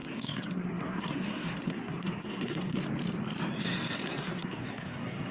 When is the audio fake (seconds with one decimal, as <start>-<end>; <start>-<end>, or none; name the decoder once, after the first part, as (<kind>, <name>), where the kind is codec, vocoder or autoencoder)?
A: 0.0-2.8 (codec, SNAC); 4.0-5.3

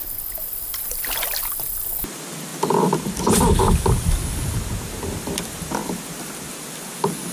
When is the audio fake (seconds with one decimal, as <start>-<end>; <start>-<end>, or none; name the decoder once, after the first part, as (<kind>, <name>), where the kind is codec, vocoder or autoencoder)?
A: none